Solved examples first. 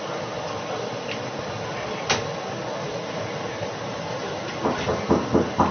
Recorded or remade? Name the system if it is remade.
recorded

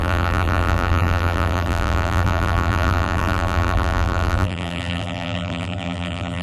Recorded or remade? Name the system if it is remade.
remade, vocoder, BigVGAN v2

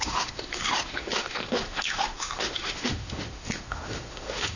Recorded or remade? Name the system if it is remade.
remade, autoencoder, DAC-VAE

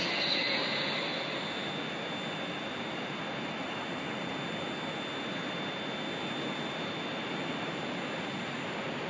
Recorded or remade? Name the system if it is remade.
recorded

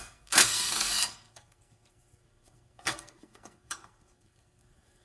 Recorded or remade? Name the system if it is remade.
remade, codec, SNAC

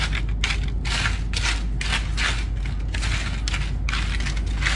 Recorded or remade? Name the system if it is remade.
recorded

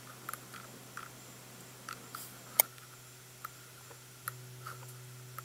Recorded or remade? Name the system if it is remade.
recorded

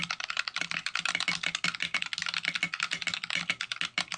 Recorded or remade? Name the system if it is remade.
recorded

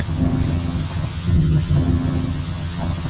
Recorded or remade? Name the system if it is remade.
remade, vocoder, HiFi-GAN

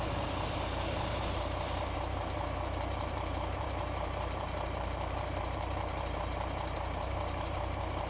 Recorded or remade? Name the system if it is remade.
remade, vocoder, BigVGAN v2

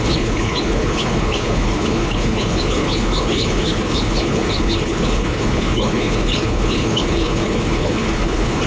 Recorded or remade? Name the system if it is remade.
remade, codec, HILCodec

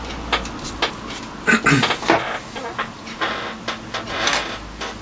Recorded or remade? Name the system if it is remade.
recorded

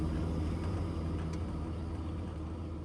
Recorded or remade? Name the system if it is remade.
recorded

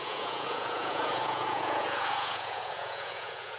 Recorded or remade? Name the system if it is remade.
remade, vocoder, Vocos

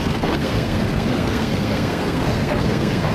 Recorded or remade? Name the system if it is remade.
remade, codec, SNAC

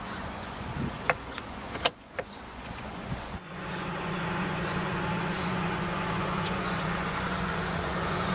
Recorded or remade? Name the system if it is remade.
remade, vocoder, Vocos